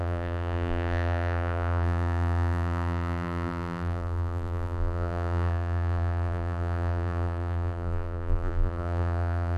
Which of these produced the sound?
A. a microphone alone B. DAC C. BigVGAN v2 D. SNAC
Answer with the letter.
C